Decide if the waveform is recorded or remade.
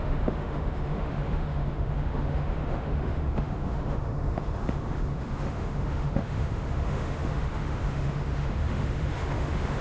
remade